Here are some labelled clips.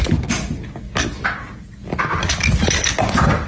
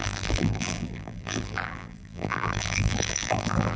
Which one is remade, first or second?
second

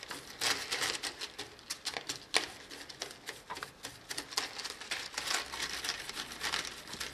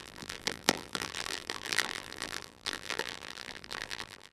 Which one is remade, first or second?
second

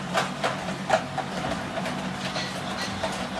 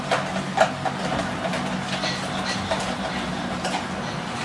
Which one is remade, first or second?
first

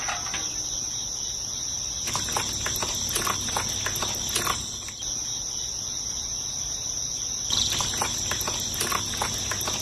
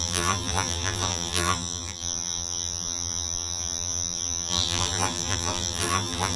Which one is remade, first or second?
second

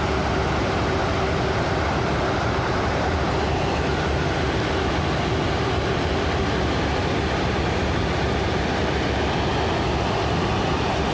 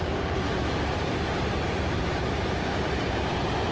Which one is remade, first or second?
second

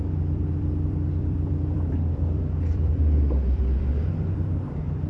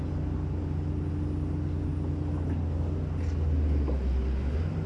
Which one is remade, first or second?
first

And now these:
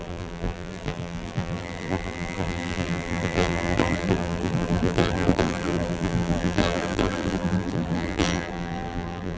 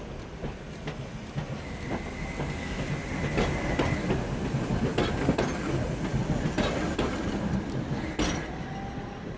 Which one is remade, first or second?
first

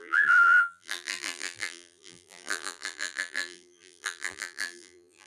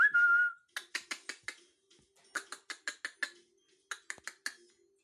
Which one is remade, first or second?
first